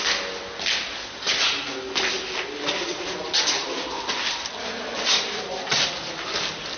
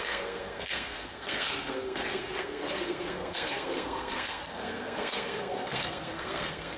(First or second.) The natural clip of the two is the first